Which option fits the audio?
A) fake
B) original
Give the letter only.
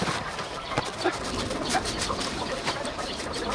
B